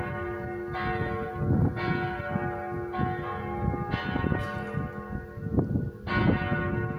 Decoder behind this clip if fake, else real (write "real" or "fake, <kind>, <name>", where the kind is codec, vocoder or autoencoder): real